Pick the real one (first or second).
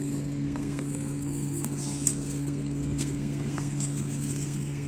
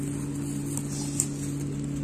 second